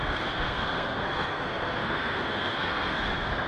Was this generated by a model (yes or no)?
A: yes